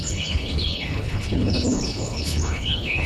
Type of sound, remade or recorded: remade